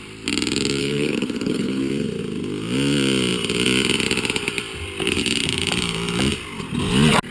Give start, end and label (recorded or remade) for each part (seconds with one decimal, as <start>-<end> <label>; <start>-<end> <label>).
0.0-0.8 recorded; 0.8-1.8 remade; 1.8-7.3 recorded